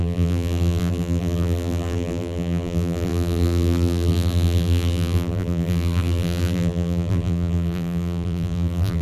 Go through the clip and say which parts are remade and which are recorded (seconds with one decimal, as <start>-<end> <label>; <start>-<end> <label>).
0.0-9.0 remade